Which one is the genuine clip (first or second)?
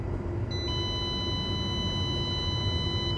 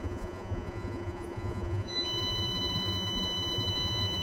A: first